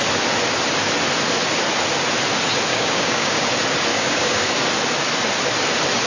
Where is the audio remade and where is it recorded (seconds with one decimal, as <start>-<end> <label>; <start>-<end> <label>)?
0.0-2.7 recorded; 2.7-3.5 remade; 3.5-3.9 recorded; 3.9-4.5 remade; 4.5-6.1 recorded